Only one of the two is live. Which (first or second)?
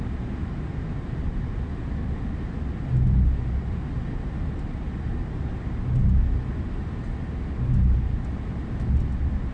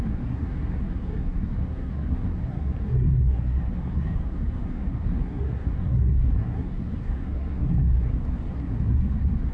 first